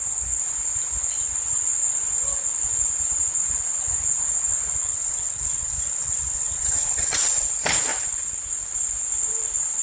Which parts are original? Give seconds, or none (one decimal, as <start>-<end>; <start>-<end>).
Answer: 0.0-4.9; 7.5-9.8